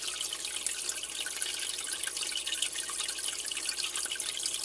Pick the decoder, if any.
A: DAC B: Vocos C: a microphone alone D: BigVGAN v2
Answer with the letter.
C